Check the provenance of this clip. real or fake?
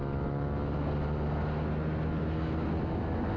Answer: real